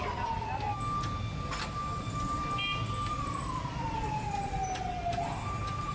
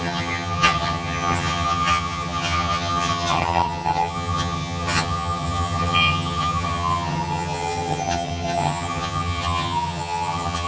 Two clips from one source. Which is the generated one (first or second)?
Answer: second